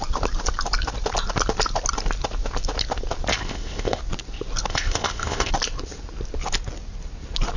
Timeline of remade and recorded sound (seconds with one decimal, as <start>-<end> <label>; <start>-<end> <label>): 0.0-3.3 recorded; 3.3-4.0 remade; 4.0-4.7 recorded; 4.7-5.5 remade; 5.5-7.6 recorded